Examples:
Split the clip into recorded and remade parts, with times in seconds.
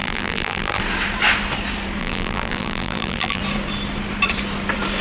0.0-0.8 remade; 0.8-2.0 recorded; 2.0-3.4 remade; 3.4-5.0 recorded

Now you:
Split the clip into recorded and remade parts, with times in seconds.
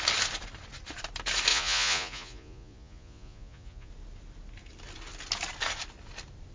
0.0-1.5 recorded; 1.5-3.9 remade; 3.9-6.5 recorded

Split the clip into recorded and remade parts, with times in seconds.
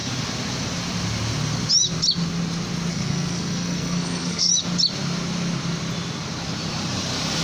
0.0-2.9 recorded; 2.9-4.5 remade; 4.5-7.4 recorded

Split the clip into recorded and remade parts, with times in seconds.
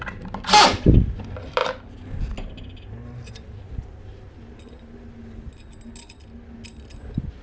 0.0-7.4 recorded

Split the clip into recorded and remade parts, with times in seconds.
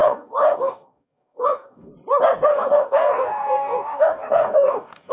0.0-1.9 remade; 1.9-2.5 recorded; 2.5-5.1 remade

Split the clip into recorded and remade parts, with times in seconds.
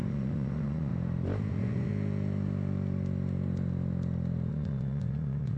0.0-0.9 remade; 0.9-1.5 recorded; 1.5-1.9 remade; 1.9-4.5 recorded; 4.5-5.6 remade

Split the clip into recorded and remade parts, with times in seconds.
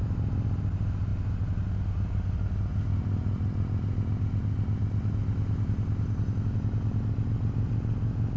0.0-8.4 recorded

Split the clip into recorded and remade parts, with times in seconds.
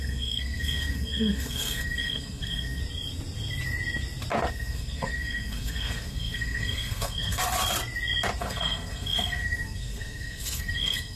0.0-2.8 remade; 2.8-4.5 recorded; 4.5-7.4 remade; 7.4-8.4 recorded; 8.4-11.2 remade